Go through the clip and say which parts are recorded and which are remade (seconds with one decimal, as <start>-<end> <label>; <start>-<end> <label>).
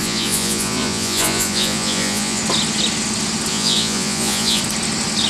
0.0-2.4 remade; 2.4-3.5 recorded; 3.5-4.6 remade; 4.6-5.3 recorded